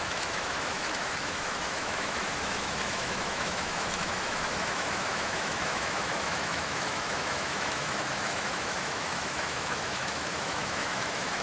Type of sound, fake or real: fake